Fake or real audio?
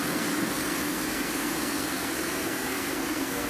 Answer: fake